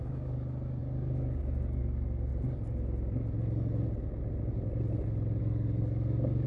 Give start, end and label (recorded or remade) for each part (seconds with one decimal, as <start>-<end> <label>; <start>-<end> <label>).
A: 0.0-2.3 remade; 2.3-5.4 recorded; 5.4-6.5 remade